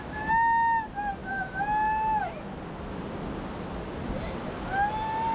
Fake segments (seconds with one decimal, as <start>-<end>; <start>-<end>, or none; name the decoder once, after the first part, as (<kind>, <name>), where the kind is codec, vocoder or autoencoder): none